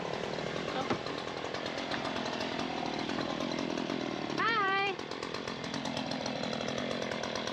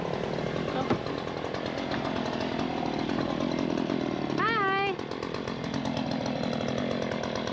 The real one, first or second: second